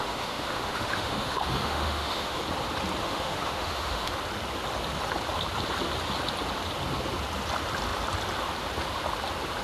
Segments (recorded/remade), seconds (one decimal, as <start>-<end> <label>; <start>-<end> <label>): 0.0-2.4 remade; 2.4-3.0 recorded; 3.0-4.2 remade; 4.2-9.6 recorded